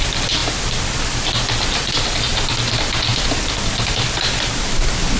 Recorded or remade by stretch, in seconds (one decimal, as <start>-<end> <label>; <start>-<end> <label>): 0.0-5.2 remade